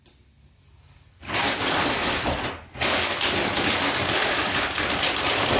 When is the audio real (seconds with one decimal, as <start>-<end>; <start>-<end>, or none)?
0.0-5.6